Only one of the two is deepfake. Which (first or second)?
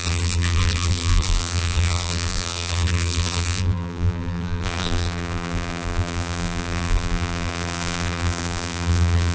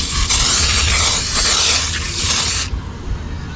first